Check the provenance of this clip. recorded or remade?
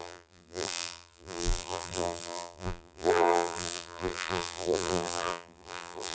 remade